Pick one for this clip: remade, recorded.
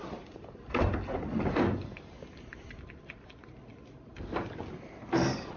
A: recorded